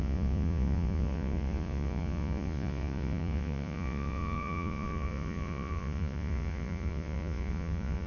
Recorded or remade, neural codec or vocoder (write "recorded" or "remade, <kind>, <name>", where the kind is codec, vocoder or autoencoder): remade, vocoder, Vocos